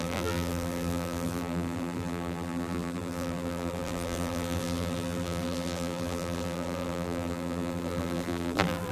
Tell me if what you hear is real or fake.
fake